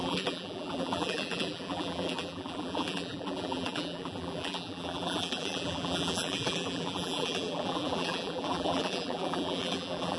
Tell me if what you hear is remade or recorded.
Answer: remade